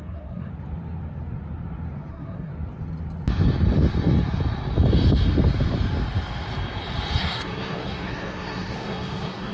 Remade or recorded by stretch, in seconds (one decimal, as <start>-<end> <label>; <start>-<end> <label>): 0.0-0.5 remade; 0.5-2.1 recorded; 2.1-2.5 remade; 2.5-7.2 recorded; 7.2-9.5 remade